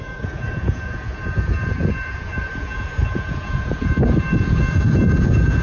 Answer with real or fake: fake